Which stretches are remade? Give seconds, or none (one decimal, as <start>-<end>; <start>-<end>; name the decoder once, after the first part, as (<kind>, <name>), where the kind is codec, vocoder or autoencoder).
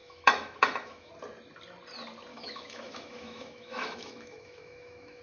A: 0.0-1.1 (autoencoder, DAC-VAE); 2.3-5.2